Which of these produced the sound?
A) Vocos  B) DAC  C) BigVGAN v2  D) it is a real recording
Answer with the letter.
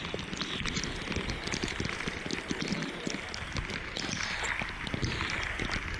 C